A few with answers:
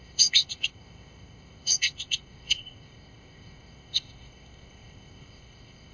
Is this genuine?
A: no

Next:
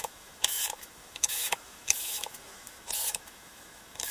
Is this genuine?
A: no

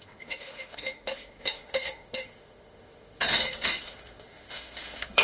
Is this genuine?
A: no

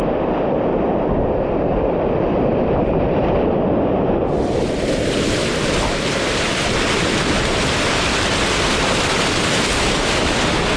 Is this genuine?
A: no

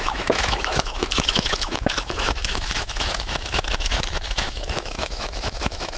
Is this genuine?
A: no